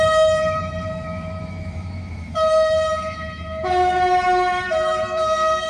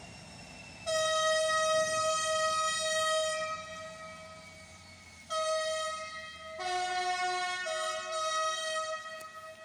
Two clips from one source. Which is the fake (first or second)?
first